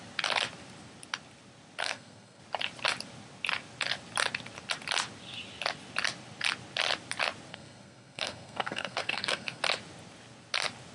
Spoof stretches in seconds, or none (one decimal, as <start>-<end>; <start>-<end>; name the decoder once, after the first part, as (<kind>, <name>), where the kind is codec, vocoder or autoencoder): 1.8-2.4 (codec, SNAC); 7.5-9.6